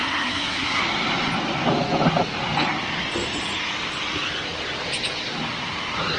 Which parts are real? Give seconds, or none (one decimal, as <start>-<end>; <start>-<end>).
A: 0.8-6.2